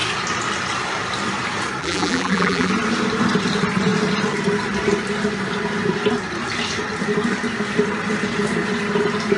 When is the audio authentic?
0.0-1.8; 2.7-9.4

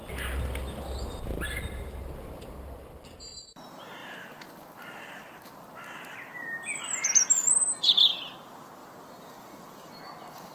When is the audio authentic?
0.0-8.8; 9.9-10.5

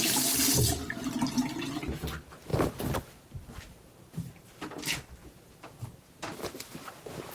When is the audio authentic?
0.0-2.5

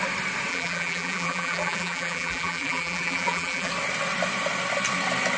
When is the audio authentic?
0.0-0.5; 3.7-5.4

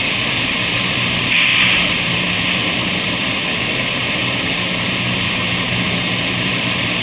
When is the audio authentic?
none

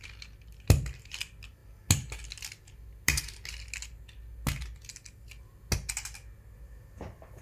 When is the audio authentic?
0.0-7.4

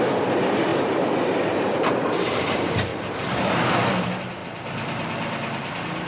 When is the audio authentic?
0.0-0.7; 2.1-2.9; 3.9-6.1

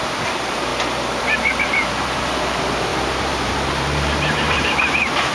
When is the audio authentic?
0.7-1.2